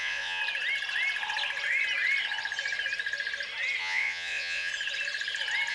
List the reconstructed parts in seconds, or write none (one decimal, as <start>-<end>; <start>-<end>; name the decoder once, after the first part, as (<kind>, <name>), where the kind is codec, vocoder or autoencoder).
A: 0.0-0.4 (vocoder, Vocos); 3.8-4.7